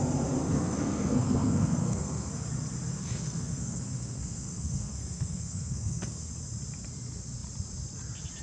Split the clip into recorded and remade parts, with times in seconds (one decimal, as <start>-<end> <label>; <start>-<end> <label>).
0.0-0.4 recorded; 0.4-2.3 remade; 2.3-2.9 recorded; 2.9-6.3 remade; 6.3-8.4 recorded